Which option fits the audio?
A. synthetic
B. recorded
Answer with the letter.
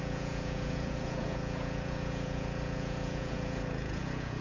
A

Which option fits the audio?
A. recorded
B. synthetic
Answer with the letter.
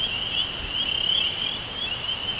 A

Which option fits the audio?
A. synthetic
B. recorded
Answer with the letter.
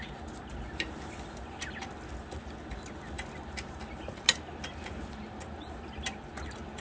B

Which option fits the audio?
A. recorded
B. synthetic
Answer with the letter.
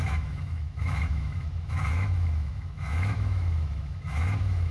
B